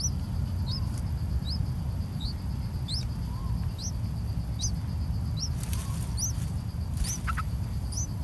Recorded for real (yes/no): yes